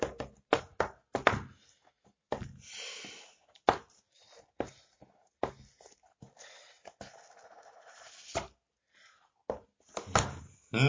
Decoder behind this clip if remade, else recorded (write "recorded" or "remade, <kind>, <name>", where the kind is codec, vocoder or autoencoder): recorded